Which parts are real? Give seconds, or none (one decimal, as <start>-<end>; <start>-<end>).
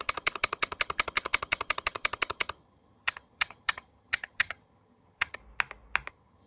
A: 5.4-6.1